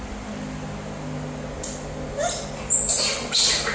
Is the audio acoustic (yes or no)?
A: yes